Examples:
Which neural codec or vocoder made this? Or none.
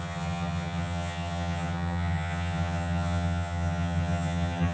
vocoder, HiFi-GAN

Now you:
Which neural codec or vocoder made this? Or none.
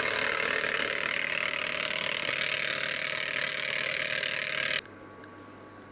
none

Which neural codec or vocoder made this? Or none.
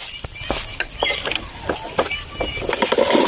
none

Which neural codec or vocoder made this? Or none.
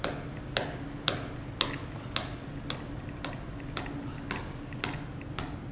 none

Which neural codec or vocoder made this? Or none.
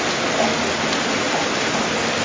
none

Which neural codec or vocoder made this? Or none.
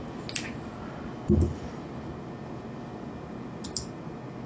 none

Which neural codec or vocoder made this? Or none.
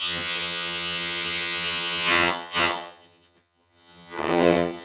vocoder, HiFi-GAN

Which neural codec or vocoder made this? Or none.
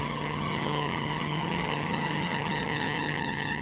vocoder, HiFi-GAN